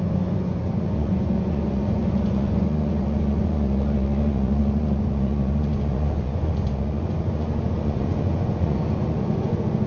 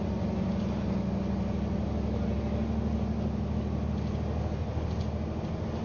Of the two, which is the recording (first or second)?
second